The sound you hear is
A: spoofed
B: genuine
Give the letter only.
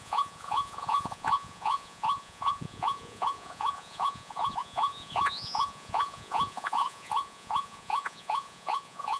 A